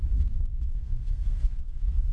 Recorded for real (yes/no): no